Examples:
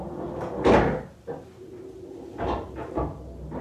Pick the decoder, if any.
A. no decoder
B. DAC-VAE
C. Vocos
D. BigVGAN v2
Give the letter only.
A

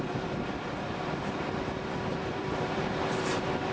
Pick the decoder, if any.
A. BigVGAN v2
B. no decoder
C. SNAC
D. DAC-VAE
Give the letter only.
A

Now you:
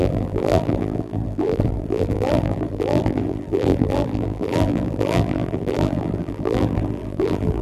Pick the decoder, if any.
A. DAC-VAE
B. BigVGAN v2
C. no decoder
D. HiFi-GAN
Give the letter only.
B